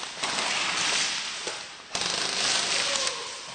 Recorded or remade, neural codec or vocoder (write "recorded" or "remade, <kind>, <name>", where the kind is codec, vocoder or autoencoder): recorded